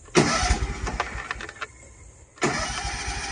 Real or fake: real